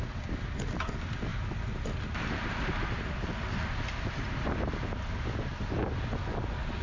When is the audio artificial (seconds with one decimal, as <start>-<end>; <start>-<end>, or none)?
none